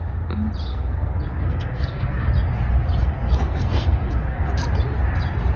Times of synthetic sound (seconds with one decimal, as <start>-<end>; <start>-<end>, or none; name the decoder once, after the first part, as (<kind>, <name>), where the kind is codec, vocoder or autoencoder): 0.7-2.3 (codec, SNAC); 3.0-4.5